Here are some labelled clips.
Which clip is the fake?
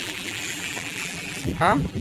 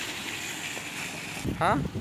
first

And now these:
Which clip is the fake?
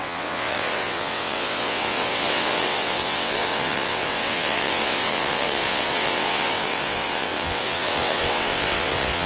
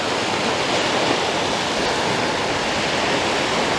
first